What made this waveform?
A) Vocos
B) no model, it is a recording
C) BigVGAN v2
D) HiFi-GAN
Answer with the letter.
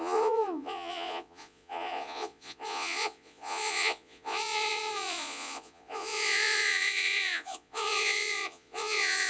A